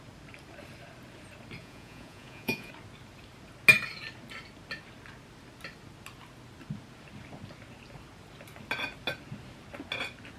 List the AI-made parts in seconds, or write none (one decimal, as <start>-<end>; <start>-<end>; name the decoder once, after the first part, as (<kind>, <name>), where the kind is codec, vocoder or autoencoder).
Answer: 1.6-2.7 (vocoder, Vocos)